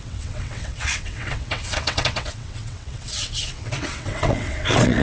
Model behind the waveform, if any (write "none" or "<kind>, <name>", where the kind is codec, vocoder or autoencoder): vocoder, WaveNeXt